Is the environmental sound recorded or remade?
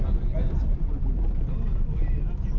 recorded